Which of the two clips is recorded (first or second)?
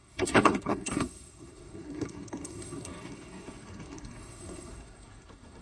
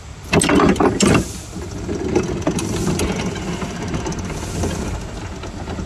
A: second